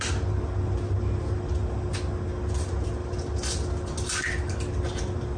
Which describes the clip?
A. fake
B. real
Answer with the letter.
B